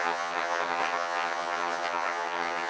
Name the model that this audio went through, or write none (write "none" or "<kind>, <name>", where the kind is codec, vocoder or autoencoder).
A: vocoder, HiFi-GAN